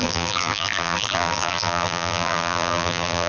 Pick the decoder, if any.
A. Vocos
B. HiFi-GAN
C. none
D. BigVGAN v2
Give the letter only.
D